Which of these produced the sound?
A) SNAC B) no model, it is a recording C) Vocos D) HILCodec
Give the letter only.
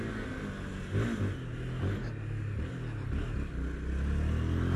B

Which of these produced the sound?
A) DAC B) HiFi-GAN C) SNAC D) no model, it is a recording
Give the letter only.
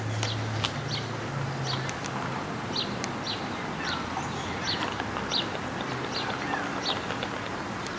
D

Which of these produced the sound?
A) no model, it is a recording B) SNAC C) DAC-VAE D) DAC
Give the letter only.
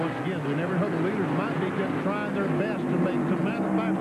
A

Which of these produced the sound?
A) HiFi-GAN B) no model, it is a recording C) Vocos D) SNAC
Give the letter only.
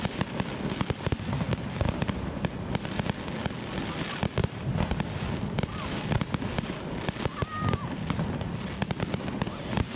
B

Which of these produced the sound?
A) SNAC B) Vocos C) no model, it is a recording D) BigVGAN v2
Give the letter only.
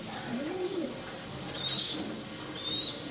C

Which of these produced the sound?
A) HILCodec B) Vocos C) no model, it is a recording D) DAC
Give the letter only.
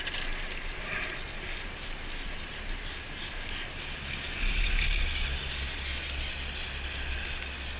C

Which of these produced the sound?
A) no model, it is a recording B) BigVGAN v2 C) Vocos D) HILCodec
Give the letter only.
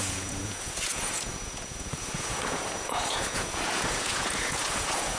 C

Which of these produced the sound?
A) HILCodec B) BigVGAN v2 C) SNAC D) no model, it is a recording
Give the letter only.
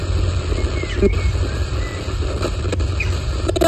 D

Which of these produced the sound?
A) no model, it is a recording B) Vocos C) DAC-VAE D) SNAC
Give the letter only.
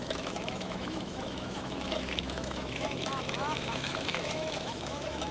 C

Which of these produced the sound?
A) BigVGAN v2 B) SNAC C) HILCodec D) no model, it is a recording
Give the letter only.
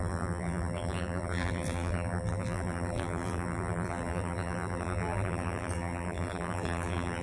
A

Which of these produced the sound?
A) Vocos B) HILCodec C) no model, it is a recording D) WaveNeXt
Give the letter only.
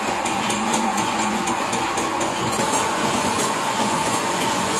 A